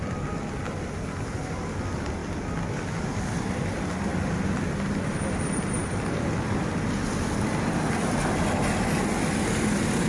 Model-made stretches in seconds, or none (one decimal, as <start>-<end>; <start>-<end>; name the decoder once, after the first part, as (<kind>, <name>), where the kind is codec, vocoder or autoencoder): 0.0-2.2 (vocoder, BigVGAN v2); 2.7-10.1